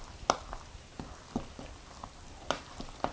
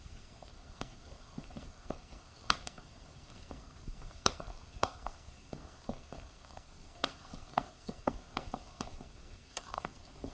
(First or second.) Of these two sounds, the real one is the first